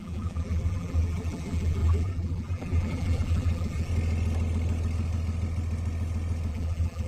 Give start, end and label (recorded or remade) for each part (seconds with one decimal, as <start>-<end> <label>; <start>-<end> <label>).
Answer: 0.0-3.9 remade; 3.9-6.5 recorded; 6.5-7.1 remade